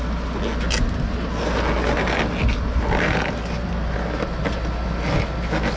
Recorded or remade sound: recorded